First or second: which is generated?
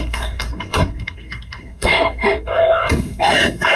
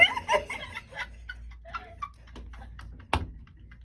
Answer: first